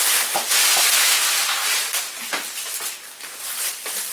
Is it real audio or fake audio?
real